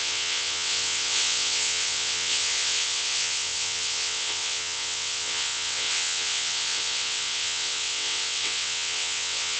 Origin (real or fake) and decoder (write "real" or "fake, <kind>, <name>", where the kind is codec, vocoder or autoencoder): fake, vocoder, WaveNeXt